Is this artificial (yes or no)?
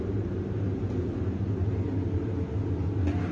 no